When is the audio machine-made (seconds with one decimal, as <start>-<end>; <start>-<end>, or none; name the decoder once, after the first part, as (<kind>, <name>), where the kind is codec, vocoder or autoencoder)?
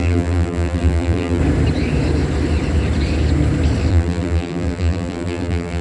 0.0-1.4 (vocoder, BigVGAN v2); 3.9-5.8